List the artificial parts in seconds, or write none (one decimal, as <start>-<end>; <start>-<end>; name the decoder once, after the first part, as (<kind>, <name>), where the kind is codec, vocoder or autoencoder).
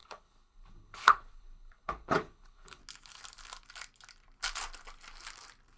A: 0.0-2.8 (codec, HILCodec)